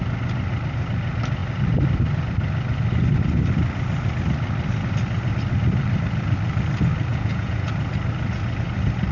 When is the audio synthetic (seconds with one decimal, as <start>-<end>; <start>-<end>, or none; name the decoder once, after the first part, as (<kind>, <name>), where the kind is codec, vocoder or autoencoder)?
7.1-7.7 (vocoder, Vocos)